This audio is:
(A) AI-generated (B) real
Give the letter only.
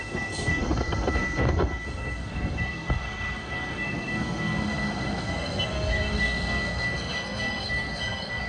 A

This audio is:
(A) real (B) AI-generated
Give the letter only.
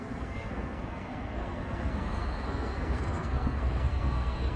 B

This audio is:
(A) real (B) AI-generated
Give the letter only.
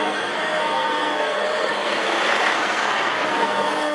B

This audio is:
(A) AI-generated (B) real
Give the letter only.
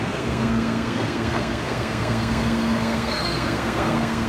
A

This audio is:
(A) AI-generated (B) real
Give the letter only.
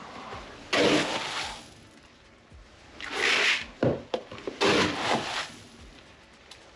B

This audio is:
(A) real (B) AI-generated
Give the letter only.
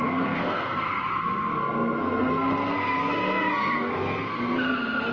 B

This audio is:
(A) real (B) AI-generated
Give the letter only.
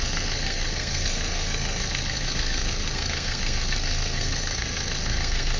B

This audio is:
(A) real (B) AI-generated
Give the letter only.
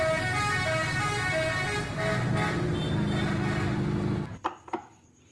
A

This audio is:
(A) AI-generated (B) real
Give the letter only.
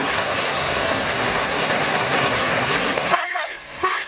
A